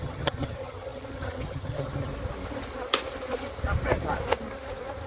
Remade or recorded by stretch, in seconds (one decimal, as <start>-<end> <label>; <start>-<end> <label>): 0.0-2.1 remade; 2.1-5.1 recorded

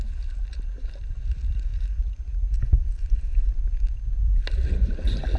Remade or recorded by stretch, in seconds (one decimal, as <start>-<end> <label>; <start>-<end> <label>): 0.0-5.4 recorded

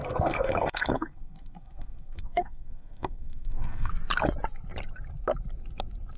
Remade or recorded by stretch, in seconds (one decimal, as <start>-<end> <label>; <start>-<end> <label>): 0.0-3.9 remade; 3.9-6.2 recorded

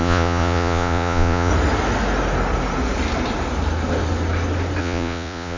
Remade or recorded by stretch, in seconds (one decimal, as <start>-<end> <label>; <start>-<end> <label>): 0.0-1.5 remade; 1.5-4.8 recorded; 4.8-5.6 remade

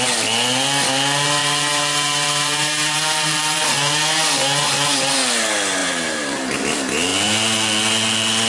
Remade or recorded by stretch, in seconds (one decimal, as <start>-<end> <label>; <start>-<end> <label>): 0.0-1.4 recorded; 1.4-3.6 remade; 3.6-5.8 recorded; 5.8-6.6 remade; 6.6-8.5 recorded

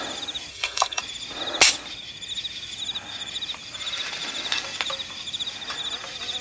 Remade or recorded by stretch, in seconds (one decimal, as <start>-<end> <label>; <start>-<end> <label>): 0.0-0.5 recorded; 0.5-1.0 remade; 1.0-6.4 recorded

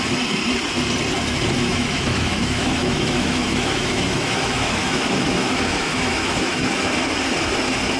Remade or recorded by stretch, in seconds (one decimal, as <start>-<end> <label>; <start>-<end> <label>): 0.0-1.7 recorded; 1.7-6.5 remade; 6.5-8.0 recorded

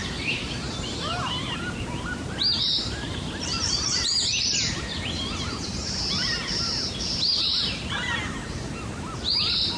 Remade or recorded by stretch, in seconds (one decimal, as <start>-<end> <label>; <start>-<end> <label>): 0.0-9.8 remade